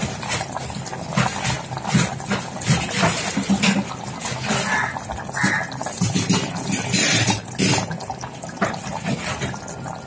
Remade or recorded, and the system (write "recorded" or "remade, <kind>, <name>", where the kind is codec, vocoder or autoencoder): recorded